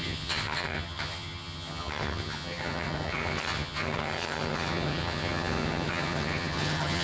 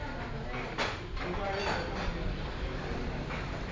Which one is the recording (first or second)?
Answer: second